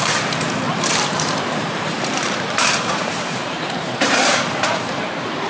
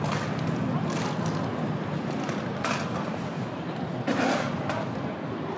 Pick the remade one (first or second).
first